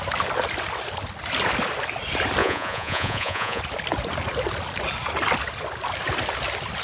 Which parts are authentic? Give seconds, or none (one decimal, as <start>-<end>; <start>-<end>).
0.0-2.4; 3.6-6.8